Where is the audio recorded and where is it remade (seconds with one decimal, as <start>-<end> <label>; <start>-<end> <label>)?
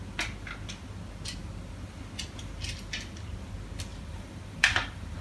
0.0-3.9 recorded; 3.9-5.2 remade